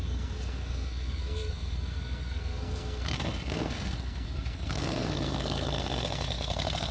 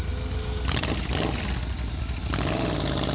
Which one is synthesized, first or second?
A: first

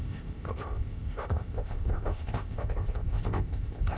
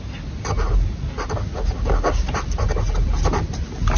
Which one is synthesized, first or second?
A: first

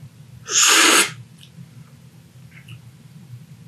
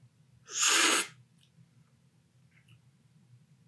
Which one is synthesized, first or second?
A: first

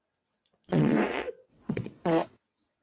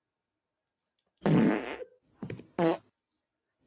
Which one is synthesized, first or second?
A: first